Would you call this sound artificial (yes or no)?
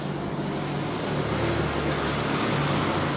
no